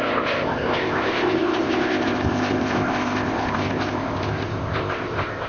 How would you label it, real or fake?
fake